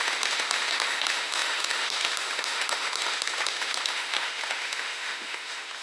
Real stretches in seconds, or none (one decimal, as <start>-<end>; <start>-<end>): none